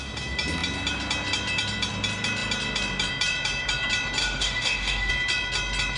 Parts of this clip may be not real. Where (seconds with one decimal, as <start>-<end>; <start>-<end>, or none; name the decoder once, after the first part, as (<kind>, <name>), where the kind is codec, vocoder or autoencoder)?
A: 4.2-5.1 (autoencoder, DAC-VAE)